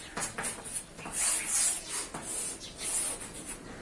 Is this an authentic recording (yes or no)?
yes